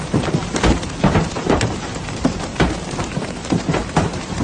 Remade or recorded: remade